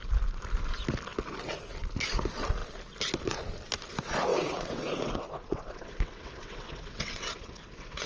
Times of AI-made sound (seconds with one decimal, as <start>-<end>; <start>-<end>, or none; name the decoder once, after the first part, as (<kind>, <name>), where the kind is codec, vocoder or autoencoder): 4.3-8.1 (vocoder, WaveNeXt)